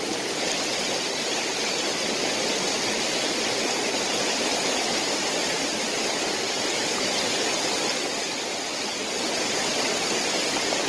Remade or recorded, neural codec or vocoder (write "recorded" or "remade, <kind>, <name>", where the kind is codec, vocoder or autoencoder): recorded